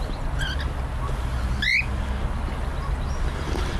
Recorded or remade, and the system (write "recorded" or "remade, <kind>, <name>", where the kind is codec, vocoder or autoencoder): recorded